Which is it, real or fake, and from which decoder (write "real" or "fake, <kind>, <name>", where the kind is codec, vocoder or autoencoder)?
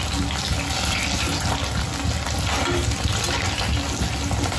real